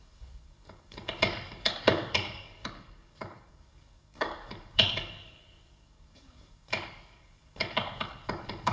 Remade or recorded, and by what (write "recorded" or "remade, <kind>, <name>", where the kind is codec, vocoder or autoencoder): remade, codec, DAC